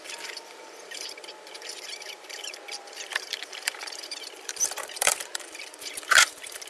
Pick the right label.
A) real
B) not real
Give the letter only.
B